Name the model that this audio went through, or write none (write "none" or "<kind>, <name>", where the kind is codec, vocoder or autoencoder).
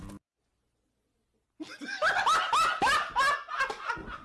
none